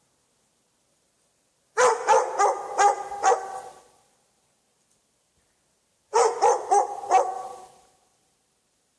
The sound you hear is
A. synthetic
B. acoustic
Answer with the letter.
B